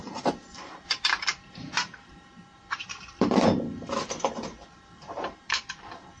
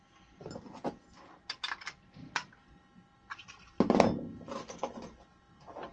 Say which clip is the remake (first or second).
first